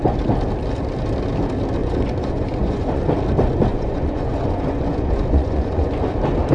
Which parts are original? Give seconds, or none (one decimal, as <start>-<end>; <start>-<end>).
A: 0.0-1.8; 3.0-3.7; 6.0-6.5